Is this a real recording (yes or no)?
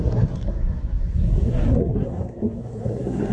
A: no